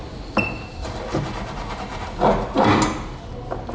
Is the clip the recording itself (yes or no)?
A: yes